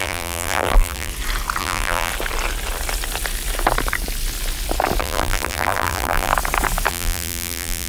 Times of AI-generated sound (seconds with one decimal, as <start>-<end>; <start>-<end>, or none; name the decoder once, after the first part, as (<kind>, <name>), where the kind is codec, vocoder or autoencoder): 0.0-1.1 (vocoder, BigVGAN v2); 1.6-2.1; 5.0-6.3; 6.9-7.9